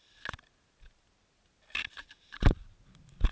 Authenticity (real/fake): real